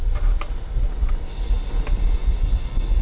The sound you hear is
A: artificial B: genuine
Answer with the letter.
B